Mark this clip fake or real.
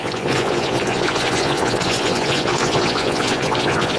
fake